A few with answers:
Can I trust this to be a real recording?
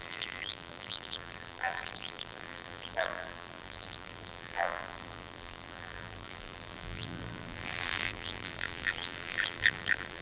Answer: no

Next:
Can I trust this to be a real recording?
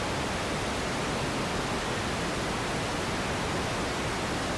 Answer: yes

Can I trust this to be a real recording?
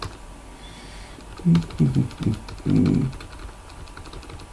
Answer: yes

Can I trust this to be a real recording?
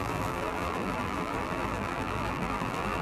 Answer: no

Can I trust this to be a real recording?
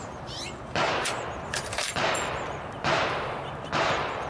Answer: no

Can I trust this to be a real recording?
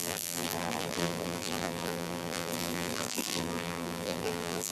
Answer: no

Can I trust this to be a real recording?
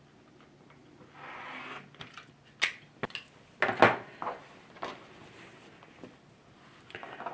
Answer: yes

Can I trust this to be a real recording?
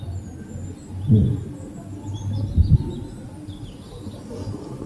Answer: yes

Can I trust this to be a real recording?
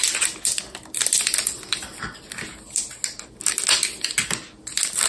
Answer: yes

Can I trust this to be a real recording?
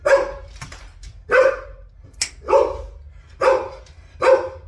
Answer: yes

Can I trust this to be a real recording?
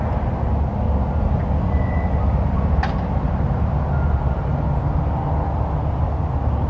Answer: yes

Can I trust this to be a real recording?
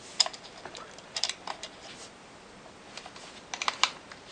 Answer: yes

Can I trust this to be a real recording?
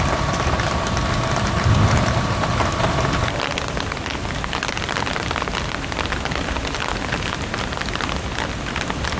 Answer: yes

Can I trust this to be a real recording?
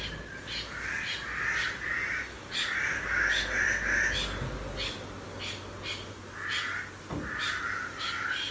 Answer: yes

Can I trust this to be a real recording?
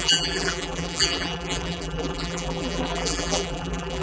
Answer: no